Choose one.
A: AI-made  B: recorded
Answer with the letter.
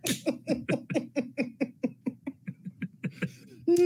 B